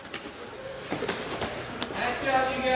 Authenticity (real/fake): real